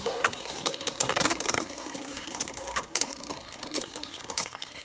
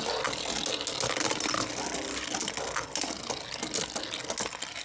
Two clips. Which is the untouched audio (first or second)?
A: second